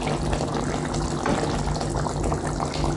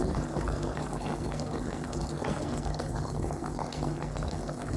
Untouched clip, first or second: first